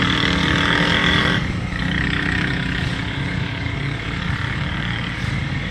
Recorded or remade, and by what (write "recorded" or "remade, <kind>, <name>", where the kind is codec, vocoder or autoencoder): remade, codec, DAC